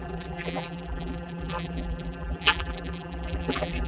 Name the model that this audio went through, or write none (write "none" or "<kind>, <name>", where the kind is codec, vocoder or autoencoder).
vocoder, BigVGAN v2